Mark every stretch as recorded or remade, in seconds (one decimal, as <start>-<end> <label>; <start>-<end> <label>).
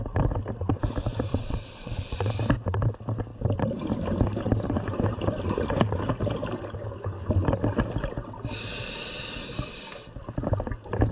0.0-1.3 recorded; 1.3-2.3 remade; 2.3-11.1 recorded